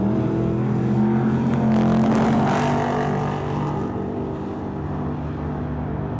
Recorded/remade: recorded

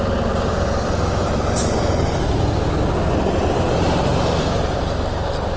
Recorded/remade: recorded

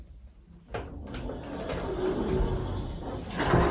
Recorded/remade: recorded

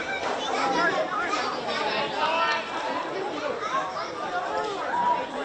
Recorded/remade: recorded